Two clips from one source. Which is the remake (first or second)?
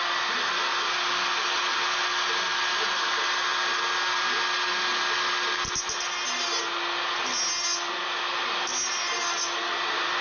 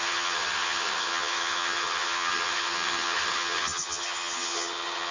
second